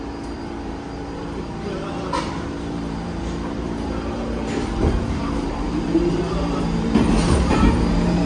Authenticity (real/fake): fake